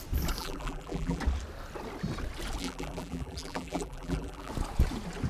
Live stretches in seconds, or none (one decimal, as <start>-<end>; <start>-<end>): 0.0-0.4; 1.2-2.6; 4.5-5.3